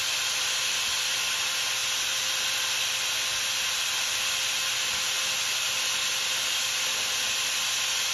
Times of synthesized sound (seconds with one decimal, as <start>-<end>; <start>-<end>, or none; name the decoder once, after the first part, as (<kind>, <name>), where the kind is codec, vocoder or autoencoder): none

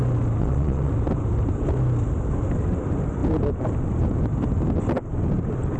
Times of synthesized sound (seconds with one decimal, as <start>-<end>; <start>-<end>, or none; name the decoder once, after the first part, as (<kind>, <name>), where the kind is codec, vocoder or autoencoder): 0.4-0.9 (vocoder, Vocos)

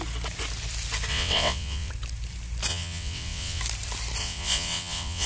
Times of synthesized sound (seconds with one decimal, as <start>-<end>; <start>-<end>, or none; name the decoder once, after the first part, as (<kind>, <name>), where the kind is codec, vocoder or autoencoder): 1.1-1.9 (vocoder, WaveNeXt); 2.7-3.6; 4.2-5.3

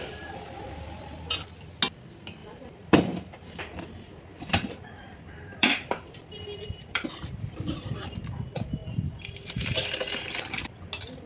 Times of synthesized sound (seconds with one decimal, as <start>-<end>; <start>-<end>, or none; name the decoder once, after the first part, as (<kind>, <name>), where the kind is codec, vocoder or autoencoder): 2.4-3.6 (vocoder, BigVGAN v2); 4.3-8.1

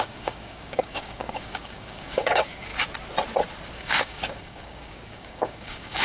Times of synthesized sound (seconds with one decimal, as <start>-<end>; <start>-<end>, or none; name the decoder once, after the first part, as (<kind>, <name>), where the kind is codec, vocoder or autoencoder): 0.0-2.7 (codec, DAC); 3.8-6.0